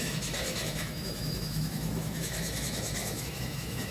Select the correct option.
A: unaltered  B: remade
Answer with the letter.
B